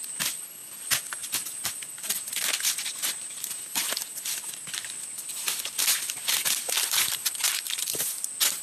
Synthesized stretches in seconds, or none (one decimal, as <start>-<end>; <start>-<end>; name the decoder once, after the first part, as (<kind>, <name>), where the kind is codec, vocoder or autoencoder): none